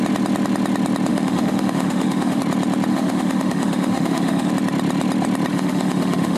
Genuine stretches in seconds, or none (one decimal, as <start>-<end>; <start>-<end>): 0.0-1.1; 2.4-2.9; 4.5-5.5